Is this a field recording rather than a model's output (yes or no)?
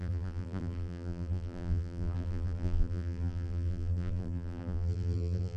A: no